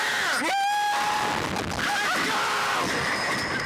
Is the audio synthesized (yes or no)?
no